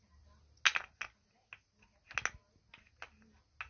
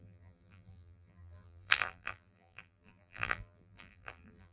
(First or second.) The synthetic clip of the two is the second